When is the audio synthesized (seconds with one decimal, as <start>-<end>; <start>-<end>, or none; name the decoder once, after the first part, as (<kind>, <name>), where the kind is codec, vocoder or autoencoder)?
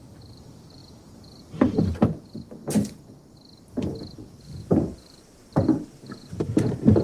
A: 0.0-2.6 (vocoder, BigVGAN v2); 4.3-7.0